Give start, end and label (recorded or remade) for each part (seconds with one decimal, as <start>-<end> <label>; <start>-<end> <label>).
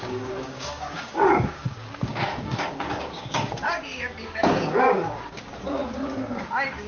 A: 0.0-6.9 remade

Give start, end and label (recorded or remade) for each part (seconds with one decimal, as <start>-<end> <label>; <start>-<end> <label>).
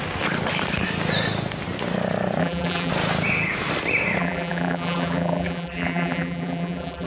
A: 0.0-2.4 recorded; 2.4-2.9 remade; 2.9-4.2 recorded; 4.2-7.1 remade